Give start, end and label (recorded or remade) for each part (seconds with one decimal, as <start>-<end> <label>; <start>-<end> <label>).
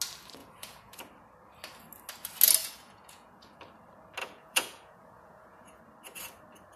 0.0-0.4 recorded; 0.4-1.0 remade; 1.0-2.6 recorded; 2.6-3.6 remade; 3.6-4.2 recorded; 4.2-5.8 remade; 5.8-6.8 recorded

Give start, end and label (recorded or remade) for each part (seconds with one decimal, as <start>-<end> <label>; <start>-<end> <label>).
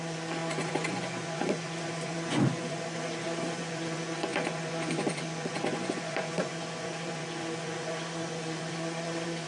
0.0-9.5 remade